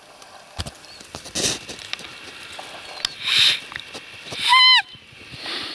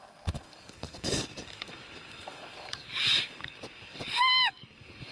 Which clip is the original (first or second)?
first